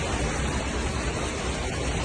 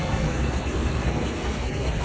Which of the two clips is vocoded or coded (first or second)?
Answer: second